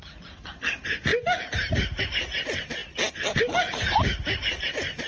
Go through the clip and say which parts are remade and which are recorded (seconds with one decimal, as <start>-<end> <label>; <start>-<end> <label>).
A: 0.0-5.1 recorded